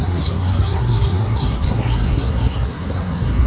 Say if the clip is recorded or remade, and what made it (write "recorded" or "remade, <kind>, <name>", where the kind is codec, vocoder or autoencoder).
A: remade, codec, SNAC